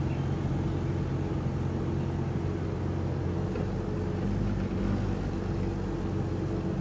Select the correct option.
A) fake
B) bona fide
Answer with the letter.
B